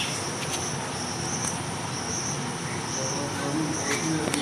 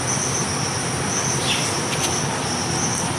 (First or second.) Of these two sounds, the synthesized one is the second